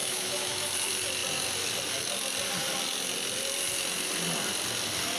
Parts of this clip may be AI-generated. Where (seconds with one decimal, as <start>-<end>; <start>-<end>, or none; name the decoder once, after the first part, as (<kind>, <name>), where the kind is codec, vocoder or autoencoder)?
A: 0.0-0.7 (autoencoder, DAC-VAE)